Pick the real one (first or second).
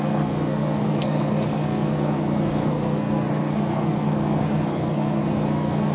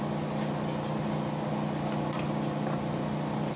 second